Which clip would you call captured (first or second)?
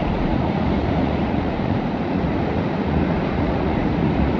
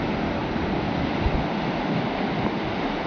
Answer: second